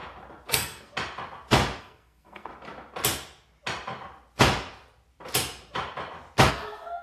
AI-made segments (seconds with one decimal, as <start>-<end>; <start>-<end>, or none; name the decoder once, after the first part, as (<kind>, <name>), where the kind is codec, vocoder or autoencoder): 0.5-0.9 (codec, SNAC); 1.8-2.5; 6.5-7.0